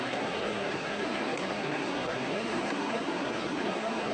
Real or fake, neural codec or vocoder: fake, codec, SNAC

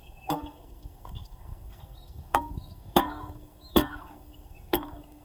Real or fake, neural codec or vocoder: fake, codec, SNAC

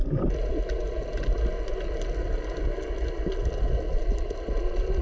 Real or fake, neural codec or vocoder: real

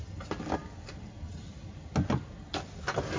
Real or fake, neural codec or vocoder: real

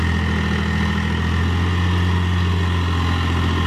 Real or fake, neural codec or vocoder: real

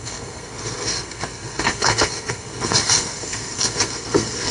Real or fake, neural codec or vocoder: fake, codec, SNAC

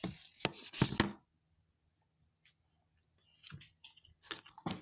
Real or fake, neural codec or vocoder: real